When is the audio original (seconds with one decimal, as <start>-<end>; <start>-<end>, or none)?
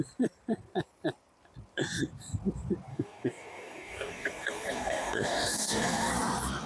0.0-2.9; 6.1-6.7